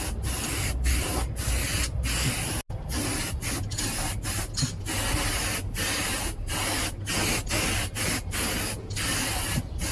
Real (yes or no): yes